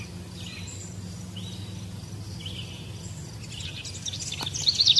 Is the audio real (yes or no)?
yes